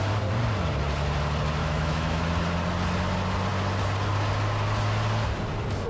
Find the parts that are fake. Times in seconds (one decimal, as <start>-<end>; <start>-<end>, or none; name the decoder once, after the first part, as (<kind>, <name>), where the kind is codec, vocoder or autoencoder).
1.6-2.3 (autoencoder, DAC-VAE)